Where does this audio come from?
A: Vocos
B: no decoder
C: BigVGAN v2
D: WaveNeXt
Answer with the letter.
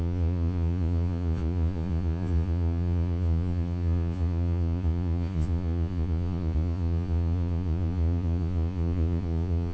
A